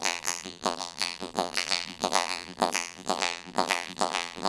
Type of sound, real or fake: fake